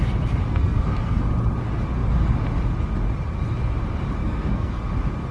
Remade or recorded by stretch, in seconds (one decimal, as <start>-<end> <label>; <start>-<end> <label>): 0.0-0.5 recorded; 0.5-1.2 remade; 1.2-4.2 recorded; 4.2-4.8 remade; 4.8-5.3 recorded